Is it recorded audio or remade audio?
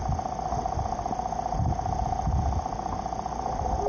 recorded